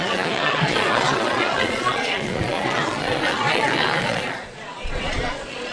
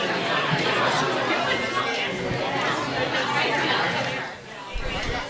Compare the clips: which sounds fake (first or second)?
first